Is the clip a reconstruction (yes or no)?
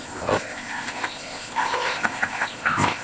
yes